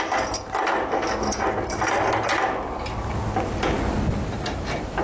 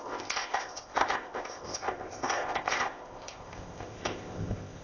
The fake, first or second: second